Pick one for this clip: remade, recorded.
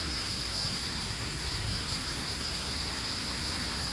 remade